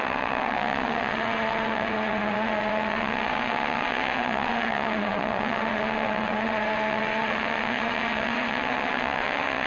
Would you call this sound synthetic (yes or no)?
yes